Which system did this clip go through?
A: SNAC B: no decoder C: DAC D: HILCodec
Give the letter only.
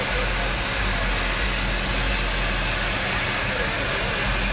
B